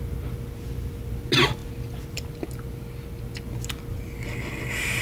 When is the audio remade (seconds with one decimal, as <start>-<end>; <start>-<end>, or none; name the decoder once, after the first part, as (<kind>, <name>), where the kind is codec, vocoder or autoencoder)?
none